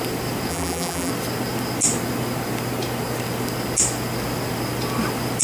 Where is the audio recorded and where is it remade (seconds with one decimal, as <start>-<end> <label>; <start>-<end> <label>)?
0.0-0.5 recorded; 0.5-1.1 remade; 1.1-5.4 recorded